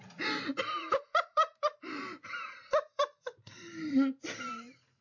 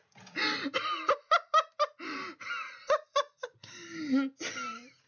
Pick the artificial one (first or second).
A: first